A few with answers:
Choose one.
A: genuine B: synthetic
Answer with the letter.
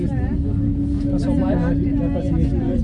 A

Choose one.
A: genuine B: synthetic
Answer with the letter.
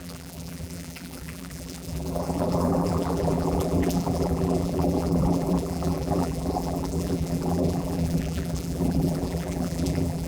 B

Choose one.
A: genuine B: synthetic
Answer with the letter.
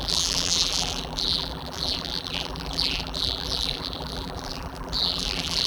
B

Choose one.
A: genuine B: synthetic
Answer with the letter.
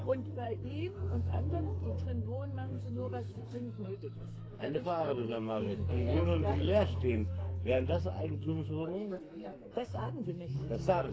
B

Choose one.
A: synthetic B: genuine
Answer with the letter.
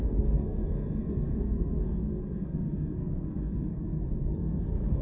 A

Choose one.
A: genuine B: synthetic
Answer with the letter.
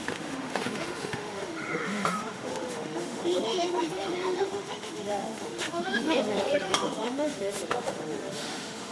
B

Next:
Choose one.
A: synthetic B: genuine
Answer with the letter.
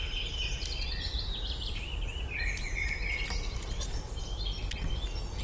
B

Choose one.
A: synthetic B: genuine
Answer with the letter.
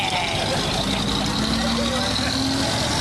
B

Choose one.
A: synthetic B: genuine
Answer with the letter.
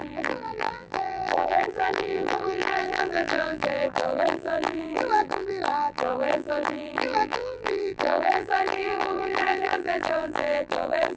A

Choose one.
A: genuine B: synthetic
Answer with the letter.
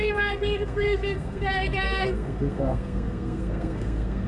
B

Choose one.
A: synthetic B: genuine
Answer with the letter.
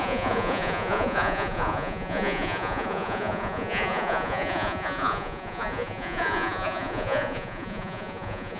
A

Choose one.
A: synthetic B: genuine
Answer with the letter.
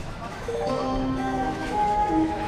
A